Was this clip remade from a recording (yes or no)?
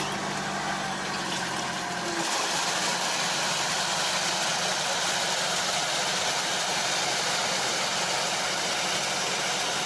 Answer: no